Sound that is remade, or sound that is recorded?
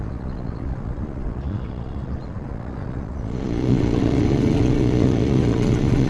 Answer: remade